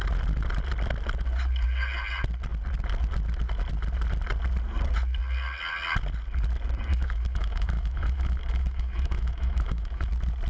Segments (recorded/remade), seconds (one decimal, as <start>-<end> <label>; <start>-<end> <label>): 0.0-6.9 recorded; 6.9-10.1 remade; 10.1-10.5 recorded